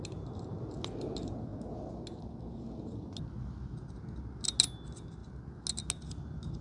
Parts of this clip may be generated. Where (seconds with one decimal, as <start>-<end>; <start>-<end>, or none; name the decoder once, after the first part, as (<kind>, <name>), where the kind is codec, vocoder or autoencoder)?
none